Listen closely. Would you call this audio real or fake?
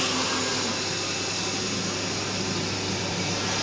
real